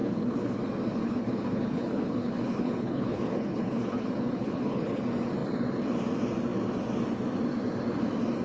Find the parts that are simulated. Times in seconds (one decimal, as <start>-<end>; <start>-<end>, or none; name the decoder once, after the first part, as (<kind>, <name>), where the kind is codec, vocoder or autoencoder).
0.0-0.6 (codec, HILCodec); 1.0-5.0